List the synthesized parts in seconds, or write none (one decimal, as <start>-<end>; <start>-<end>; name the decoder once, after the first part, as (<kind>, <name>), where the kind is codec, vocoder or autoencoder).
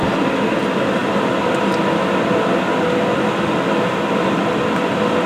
none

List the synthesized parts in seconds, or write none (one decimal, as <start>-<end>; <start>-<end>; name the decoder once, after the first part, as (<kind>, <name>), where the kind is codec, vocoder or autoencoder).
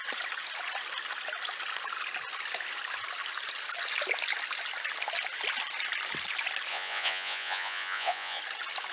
6.7-8.4 (vocoder, Vocos)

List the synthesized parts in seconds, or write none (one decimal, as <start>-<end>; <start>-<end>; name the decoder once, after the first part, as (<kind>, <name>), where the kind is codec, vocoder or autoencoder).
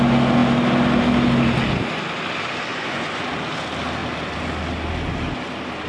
2.7-3.2 (vocoder, Vocos)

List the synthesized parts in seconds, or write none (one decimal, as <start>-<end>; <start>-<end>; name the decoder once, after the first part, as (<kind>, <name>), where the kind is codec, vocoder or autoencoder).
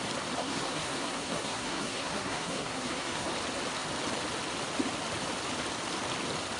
0.4-3.3 (codec, SNAC)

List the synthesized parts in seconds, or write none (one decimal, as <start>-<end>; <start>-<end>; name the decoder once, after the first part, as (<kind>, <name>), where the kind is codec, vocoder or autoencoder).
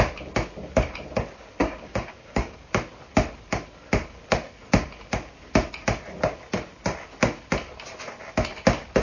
1.6-2.7 (codec, DAC)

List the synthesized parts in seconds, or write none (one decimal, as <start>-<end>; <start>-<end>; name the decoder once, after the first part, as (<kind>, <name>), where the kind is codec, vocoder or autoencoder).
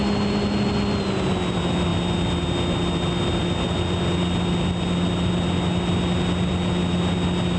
none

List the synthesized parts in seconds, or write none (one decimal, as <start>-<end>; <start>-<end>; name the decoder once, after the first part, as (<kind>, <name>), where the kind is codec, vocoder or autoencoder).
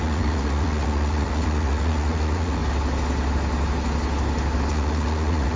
0.0-2.6 (vocoder, Vocos); 4.7-5.6